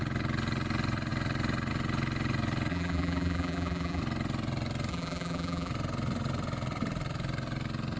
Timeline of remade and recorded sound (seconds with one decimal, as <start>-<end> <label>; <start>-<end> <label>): 0.0-2.7 recorded; 2.7-4.0 remade; 4.0-4.9 recorded; 4.9-5.7 remade; 5.7-8.0 recorded